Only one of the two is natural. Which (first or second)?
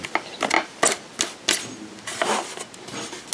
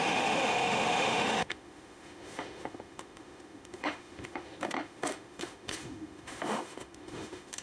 first